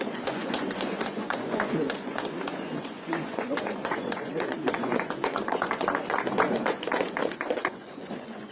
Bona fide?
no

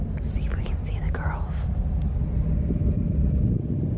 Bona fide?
yes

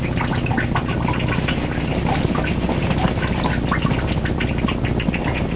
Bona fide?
yes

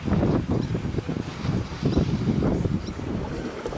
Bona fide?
no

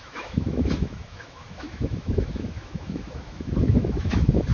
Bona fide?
no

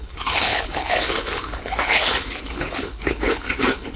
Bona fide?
no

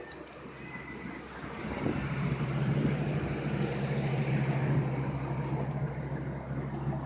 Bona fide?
yes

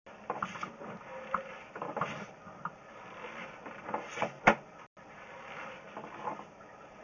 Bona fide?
yes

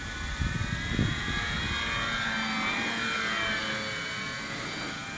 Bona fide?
yes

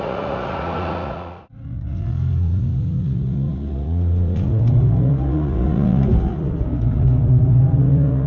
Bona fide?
no